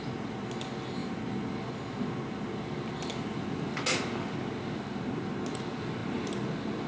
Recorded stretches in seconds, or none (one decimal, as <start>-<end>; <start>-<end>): 0.0-6.9